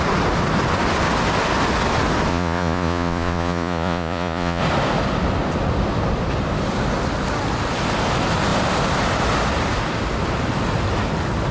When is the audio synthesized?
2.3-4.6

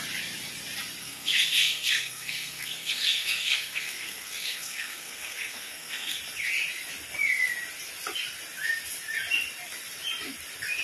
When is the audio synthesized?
1.0-6.2

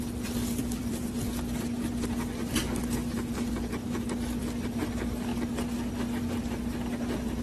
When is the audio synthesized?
0.6-1.1

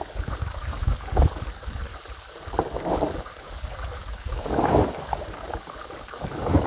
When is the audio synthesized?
0.0-1.9; 3.2-6.7

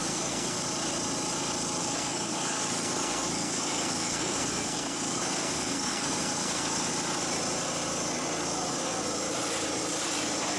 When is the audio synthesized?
0.0-0.6; 1.8-6.9

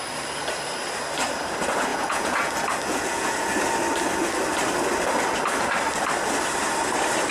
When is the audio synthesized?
1.9-2.5; 2.9-3.5

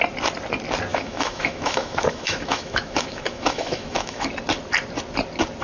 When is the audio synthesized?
0.9-4.3

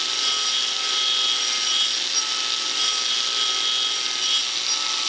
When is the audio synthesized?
none